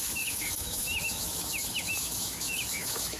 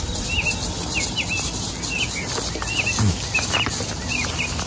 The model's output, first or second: first